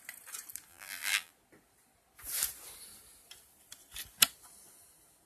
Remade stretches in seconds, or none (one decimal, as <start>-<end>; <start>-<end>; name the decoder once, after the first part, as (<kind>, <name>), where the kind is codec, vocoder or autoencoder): 0.7-1.3 (vocoder, BigVGAN v2)